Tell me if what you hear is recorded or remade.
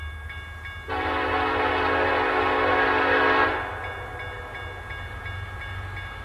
recorded